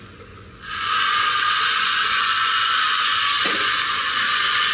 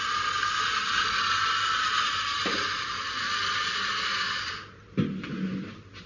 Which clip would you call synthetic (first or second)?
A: first